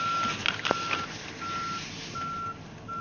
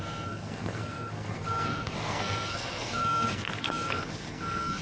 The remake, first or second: second